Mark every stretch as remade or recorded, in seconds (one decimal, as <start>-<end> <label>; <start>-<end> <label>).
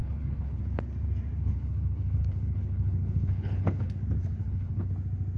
0.0-0.6 remade; 0.6-1.4 recorded; 1.4-3.9 remade; 3.9-4.4 recorded; 4.4-4.9 remade; 4.9-5.4 recorded